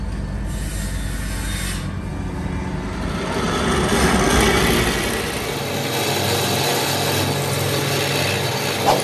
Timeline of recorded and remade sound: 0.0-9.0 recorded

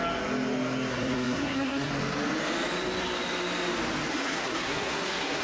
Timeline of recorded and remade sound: 0.0-0.9 recorded; 0.9-1.9 remade; 1.9-4.1 recorded; 4.1-5.4 remade

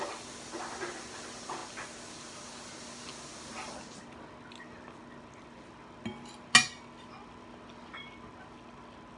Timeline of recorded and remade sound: 0.0-9.2 recorded